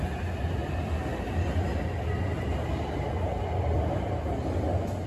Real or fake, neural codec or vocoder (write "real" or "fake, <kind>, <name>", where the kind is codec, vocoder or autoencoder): real